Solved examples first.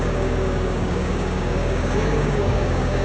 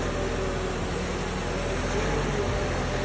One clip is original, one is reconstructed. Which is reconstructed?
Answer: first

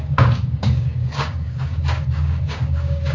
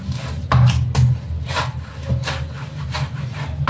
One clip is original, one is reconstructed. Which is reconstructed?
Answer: first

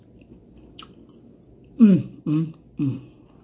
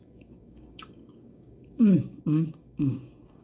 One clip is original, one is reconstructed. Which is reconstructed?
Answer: second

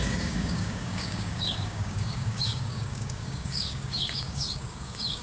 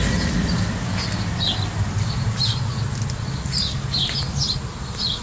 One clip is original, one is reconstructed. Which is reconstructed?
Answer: first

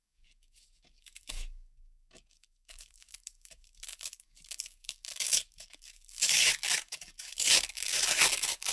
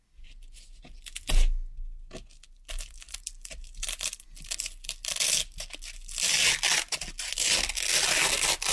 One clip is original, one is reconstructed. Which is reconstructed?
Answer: first